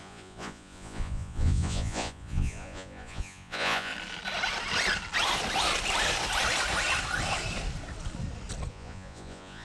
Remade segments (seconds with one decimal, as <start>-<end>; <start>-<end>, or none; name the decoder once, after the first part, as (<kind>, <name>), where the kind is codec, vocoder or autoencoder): 0.0-3.9 (vocoder, Vocos); 8.7-9.6